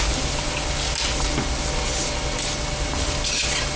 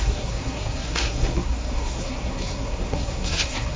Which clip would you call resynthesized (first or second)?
second